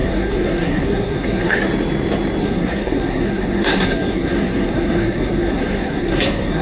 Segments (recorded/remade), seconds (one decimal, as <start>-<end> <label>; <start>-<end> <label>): 0.0-1.6 remade; 1.6-2.4 recorded; 2.4-6.6 remade